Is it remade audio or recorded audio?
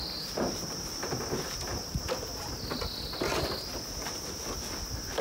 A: recorded